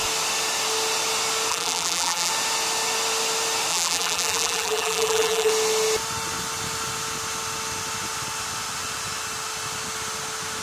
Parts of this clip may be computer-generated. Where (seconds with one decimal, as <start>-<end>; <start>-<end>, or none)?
1.5-2.3; 3.7-5.5